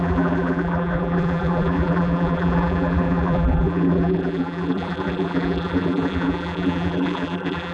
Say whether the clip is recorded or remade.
remade